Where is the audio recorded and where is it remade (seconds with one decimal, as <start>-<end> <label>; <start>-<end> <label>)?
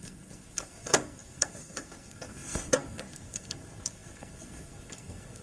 0.0-5.4 remade